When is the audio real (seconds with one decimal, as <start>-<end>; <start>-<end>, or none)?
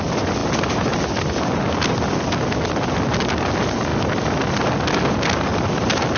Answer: 0.0-6.2